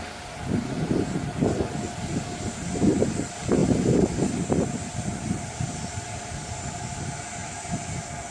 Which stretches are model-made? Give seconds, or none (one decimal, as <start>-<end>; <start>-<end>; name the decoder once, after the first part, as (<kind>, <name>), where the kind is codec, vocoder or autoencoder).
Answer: 0.0-3.6 (vocoder, BigVGAN v2); 4.2-7.4